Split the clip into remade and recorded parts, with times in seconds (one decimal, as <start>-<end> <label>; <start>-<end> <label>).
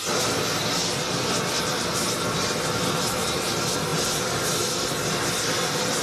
0.0-6.0 recorded